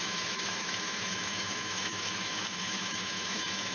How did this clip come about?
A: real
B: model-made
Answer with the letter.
B